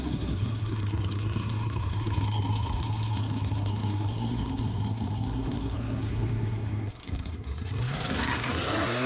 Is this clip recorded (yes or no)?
no